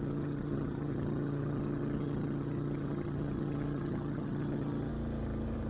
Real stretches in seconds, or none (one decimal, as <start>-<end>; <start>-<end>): 4.9-5.7